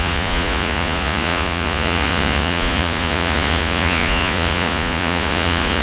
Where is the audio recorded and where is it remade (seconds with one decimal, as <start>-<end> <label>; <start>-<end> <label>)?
0.0-5.8 remade